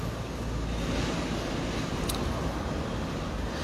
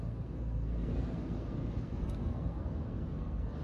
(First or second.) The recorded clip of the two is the first